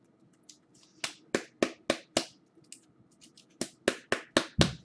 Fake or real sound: real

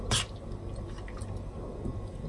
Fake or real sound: real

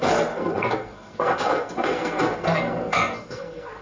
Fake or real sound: fake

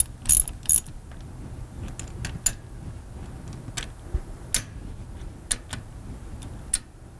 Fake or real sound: real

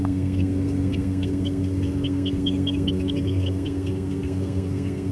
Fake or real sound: fake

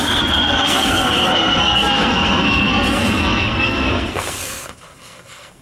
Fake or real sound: fake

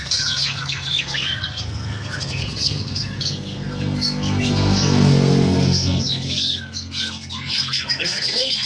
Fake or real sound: fake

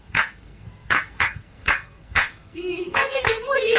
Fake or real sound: fake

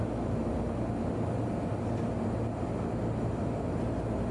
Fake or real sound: real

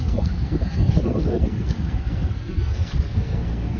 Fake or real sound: fake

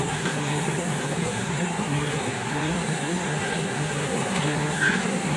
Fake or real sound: fake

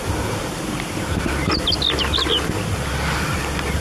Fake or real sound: real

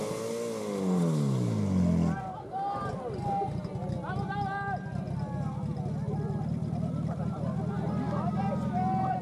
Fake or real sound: real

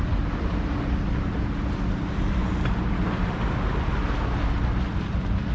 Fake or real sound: real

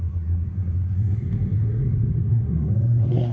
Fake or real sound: fake